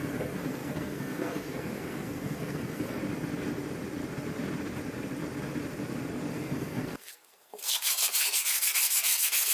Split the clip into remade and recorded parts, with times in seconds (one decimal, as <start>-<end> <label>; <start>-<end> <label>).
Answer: 0.0-3.0 remade; 3.0-6.3 recorded; 6.3-9.5 remade